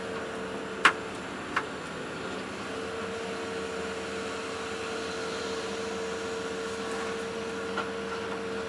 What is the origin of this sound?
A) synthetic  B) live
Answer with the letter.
B